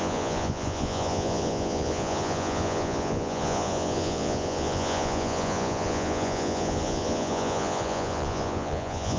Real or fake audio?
fake